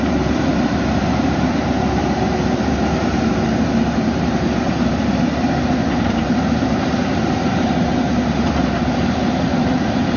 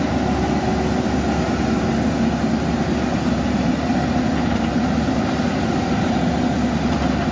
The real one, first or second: second